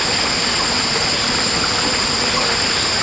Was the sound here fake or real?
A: real